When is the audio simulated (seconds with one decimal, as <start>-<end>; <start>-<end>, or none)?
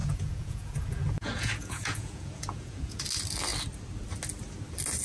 0.0-3.0